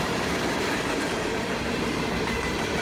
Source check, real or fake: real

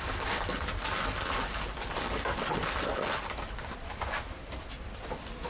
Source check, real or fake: real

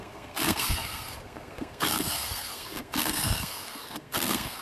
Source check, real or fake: fake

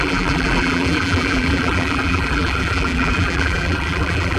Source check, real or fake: fake